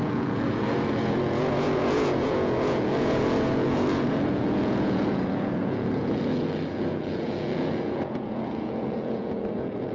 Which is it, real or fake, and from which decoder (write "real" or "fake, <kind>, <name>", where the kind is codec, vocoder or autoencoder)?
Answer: fake, vocoder, Vocos